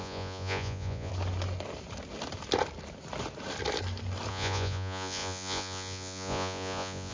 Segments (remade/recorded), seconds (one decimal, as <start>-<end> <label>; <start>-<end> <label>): 0.0-1.1 remade; 1.1-4.3 recorded; 4.3-7.1 remade